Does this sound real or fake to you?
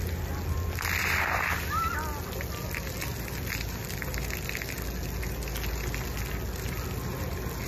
real